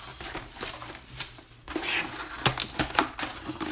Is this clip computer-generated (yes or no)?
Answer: no